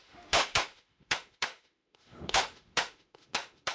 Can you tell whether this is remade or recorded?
remade